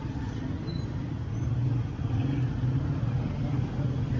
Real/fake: real